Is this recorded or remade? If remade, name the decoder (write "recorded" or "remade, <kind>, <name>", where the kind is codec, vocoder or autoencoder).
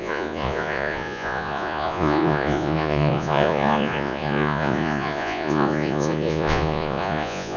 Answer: remade, vocoder, Vocos